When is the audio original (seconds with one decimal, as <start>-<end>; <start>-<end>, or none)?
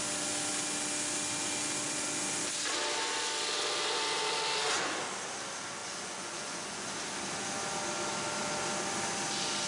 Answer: 0.0-5.8; 6.9-9.7